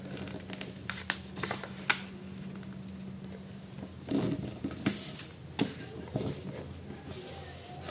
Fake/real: real